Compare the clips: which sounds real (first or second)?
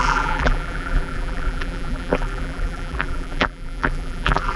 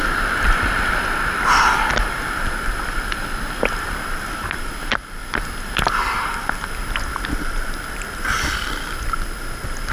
second